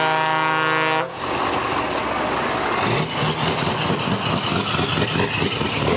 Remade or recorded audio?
recorded